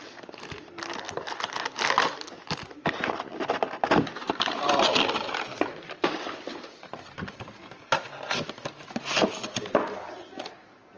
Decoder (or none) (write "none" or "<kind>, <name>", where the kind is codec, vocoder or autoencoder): none